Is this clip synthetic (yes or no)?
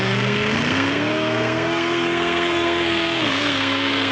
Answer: yes